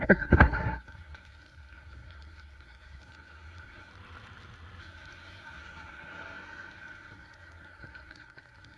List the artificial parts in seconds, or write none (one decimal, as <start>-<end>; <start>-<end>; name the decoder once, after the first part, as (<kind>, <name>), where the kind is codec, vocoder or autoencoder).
0.0-3.9 (codec, SNAC); 4.8-8.8

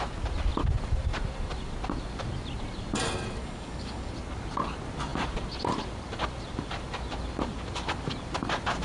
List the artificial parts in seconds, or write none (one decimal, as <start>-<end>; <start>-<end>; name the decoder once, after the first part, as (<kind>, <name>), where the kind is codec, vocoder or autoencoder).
3.4-4.1 (codec, DAC)

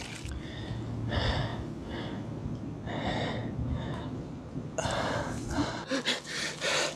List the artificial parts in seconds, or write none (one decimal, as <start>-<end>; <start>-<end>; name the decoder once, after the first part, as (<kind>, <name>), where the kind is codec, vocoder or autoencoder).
none

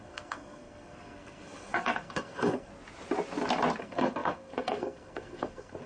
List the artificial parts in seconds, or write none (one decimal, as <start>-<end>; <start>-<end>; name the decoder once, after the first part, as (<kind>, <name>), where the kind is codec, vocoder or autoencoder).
0.0-2.7 (codec, SNAC); 3.8-5.9

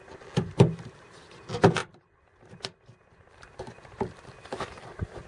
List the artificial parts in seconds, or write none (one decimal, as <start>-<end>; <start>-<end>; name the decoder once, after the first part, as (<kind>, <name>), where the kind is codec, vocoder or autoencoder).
none

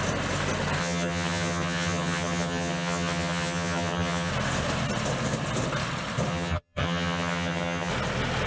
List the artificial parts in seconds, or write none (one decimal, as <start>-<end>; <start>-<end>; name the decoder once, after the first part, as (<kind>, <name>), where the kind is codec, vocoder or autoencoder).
0.8-4.3 (vocoder, HiFi-GAN); 6.3-7.9